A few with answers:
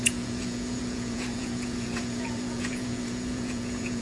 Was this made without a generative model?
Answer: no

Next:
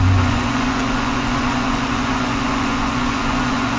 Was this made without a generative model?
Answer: no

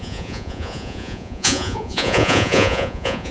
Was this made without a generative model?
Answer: no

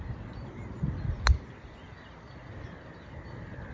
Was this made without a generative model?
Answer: yes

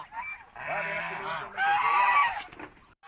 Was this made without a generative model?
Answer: yes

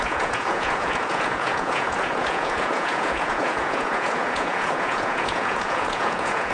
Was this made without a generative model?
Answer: no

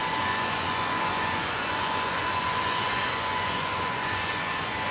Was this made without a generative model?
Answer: no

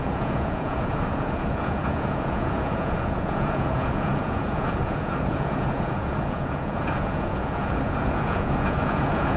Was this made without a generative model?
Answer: no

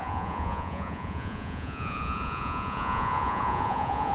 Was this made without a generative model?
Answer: no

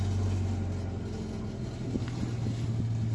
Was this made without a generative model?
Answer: yes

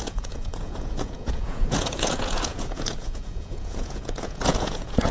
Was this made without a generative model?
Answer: no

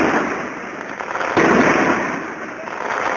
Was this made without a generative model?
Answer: yes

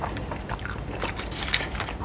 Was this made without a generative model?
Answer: yes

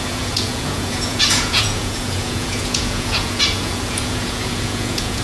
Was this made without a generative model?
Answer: no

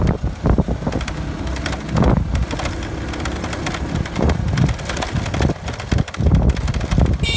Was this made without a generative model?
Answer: yes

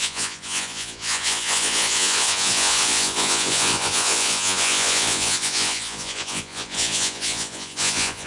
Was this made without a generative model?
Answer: no